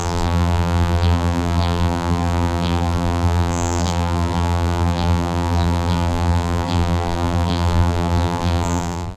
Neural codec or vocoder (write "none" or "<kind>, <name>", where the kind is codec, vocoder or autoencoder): vocoder, BigVGAN v2